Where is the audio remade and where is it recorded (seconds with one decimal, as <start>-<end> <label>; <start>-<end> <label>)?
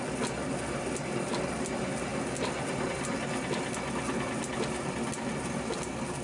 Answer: 0.0-6.2 recorded